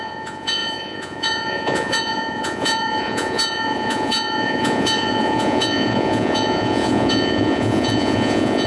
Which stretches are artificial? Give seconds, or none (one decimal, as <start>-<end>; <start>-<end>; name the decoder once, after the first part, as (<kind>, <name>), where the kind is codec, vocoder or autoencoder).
0.0-8.7 (vocoder, Vocos)